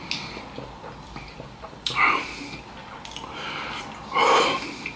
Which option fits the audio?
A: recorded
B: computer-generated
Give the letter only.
A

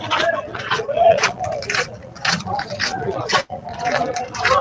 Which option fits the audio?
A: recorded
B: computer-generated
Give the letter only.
B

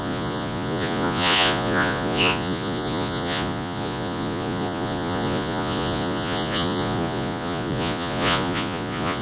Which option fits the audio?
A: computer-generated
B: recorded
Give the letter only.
A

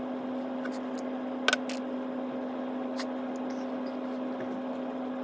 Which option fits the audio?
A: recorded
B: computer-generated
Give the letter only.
A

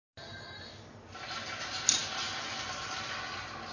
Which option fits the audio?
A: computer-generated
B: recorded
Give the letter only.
B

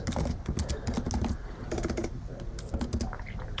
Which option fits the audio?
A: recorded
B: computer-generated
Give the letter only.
A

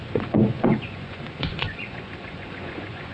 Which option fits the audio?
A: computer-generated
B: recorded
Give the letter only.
A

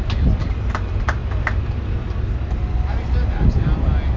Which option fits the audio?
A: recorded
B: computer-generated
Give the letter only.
A